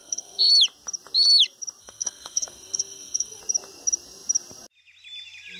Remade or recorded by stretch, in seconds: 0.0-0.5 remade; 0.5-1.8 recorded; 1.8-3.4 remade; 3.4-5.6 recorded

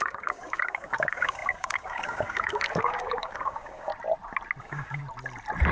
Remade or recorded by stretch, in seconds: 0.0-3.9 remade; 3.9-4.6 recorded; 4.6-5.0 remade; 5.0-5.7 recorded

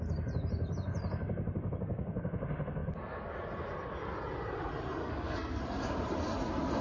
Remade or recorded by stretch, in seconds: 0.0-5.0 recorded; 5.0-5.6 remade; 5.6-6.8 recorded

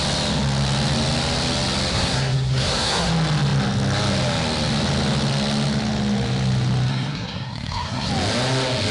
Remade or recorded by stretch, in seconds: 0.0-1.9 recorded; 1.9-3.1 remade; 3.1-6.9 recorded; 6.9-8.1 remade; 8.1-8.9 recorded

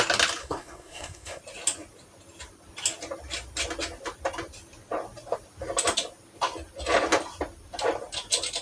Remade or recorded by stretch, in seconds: 0.0-0.4 recorded; 0.4-1.4 remade; 1.4-8.6 recorded